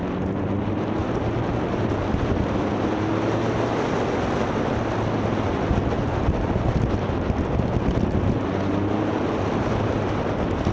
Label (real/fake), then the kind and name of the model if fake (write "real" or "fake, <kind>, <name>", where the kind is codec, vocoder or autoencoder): real